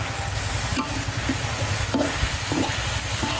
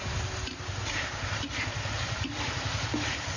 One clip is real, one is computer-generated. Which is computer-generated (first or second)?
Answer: second